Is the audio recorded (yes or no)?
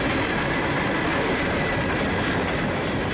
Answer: yes